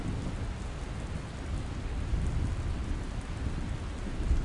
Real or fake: real